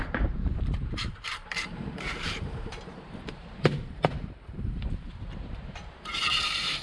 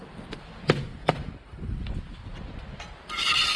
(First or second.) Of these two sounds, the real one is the second